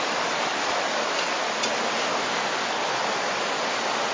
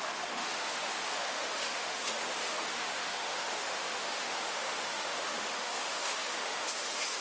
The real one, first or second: first